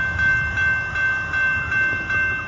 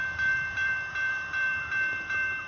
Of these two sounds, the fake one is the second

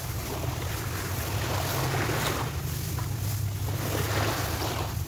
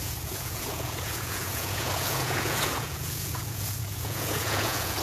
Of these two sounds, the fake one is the second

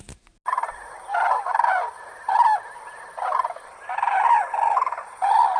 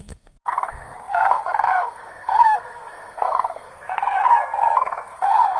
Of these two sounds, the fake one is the second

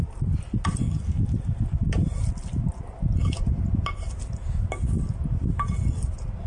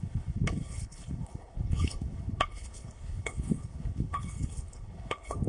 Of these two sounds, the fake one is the second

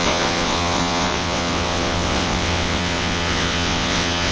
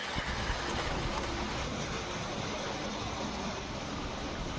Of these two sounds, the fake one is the first